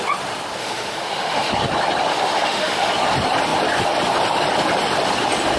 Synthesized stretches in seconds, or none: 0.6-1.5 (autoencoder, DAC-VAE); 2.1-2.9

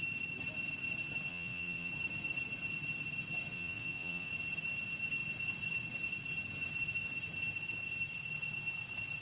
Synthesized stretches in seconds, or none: 1.3-1.9 (vocoder, Vocos); 3.5-4.3

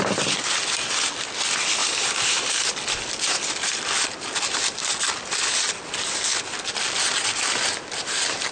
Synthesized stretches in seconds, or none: 1.8-2.5 (vocoder, BigVGAN v2)

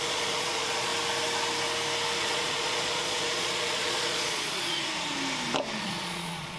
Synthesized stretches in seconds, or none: 0.0-0.9 (vocoder, Vocos); 2.2-4.8; 5.8-6.6